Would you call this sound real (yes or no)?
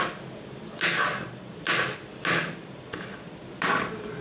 yes